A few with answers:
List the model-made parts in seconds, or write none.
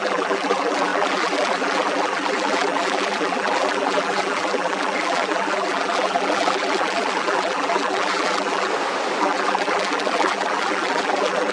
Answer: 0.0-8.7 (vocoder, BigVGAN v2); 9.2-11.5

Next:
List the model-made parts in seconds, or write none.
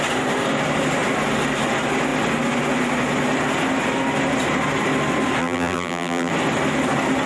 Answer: 5.4-6.3 (vocoder, BigVGAN v2)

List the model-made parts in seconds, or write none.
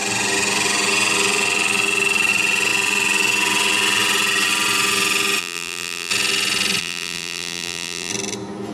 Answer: 5.4-6.1 (vocoder, BigVGAN v2); 6.8-8.1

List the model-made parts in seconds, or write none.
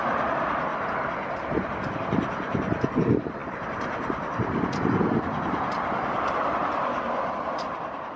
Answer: 0.0-0.7 (vocoder, BigVGAN v2); 3.0-8.2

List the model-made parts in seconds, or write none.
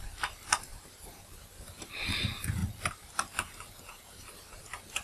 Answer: 0.0-2.6 (vocoder, BigVGAN v2); 3.8-5.0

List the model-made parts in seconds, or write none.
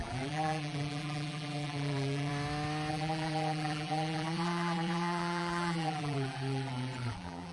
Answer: 0.0-2.3 (vocoder, BigVGAN v2); 2.9-7.5